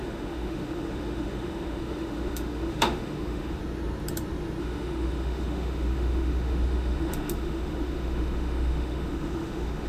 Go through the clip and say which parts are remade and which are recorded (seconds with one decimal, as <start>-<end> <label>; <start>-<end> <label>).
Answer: 0.0-3.6 remade; 3.6-4.6 recorded; 4.6-9.9 remade